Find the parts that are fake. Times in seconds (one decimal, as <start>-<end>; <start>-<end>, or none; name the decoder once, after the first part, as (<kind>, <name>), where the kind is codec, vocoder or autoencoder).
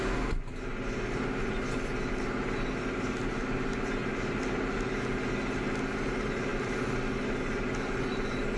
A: none